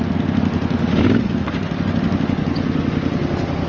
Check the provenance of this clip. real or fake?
real